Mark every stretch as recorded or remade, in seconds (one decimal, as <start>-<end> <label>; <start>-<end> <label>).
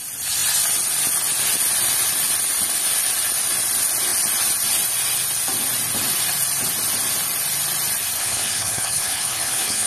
0.0-8.2 recorded; 8.2-9.9 remade